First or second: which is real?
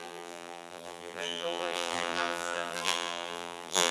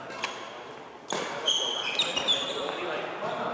second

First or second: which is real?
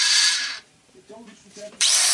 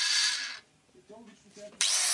second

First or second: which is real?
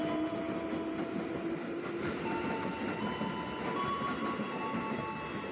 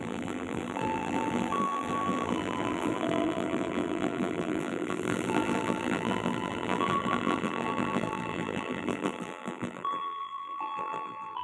first